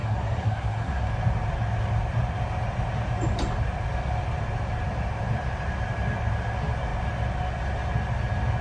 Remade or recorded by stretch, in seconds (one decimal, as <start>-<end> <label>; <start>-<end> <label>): 0.0-1.1 remade; 1.1-8.6 recorded